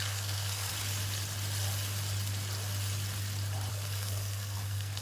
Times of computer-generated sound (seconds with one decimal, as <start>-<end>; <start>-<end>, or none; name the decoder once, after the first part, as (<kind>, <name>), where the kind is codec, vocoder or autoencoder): 0.0-0.7 (codec, SNAC); 3.7-5.0